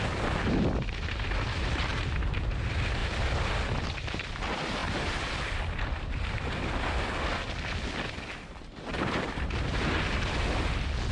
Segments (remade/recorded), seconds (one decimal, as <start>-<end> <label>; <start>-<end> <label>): 0.0-1.9 recorded; 1.9-2.6 remade; 2.6-8.9 recorded; 8.9-9.5 remade; 9.5-11.1 recorded